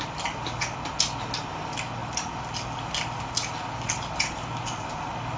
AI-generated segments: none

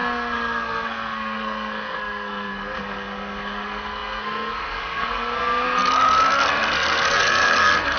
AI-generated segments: 0.0-8.0 (codec, SNAC)

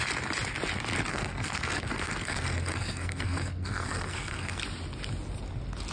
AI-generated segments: 1.1-4.6 (codec, SNAC)

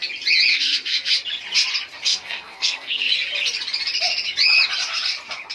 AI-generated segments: 0.5-1.1 (codec, SNAC); 2.1-3.1